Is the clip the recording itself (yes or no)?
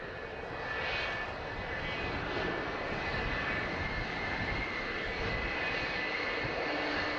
yes